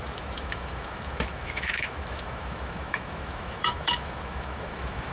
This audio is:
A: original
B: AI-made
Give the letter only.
B